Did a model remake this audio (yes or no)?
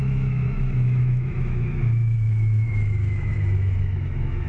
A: yes